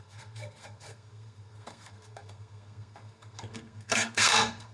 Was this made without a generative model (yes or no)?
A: no